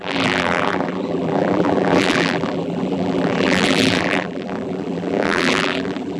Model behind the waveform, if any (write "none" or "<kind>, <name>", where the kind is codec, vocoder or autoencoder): vocoder, BigVGAN v2